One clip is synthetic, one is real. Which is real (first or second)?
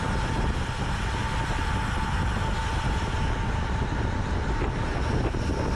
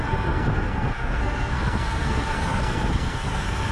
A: first